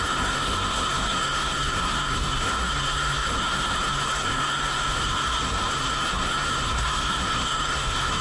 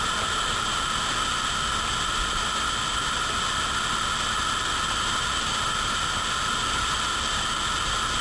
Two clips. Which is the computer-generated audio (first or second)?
first